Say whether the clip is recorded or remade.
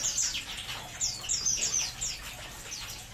recorded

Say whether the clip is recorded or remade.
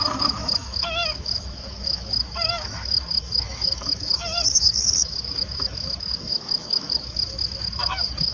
remade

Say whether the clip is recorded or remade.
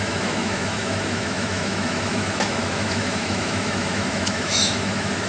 remade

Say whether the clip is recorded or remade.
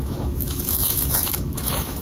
remade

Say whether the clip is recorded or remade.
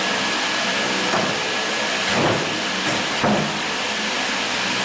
recorded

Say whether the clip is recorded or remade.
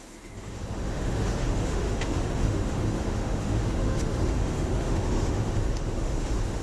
remade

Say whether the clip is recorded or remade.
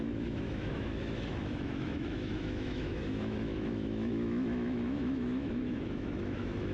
remade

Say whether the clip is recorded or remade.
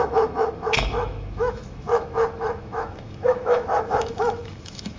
remade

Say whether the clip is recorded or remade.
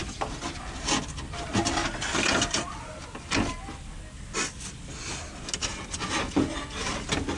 recorded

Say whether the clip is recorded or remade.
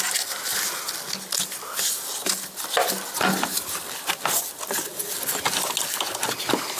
recorded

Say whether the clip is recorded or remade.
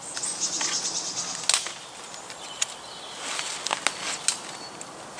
recorded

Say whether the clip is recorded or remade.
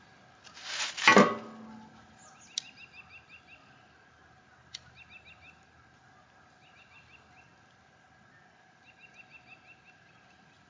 recorded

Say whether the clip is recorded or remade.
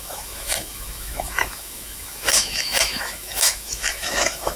remade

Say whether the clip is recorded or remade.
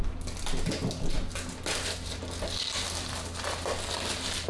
recorded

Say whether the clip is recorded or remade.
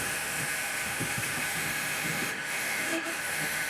remade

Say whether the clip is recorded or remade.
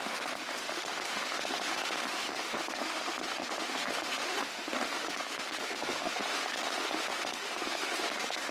remade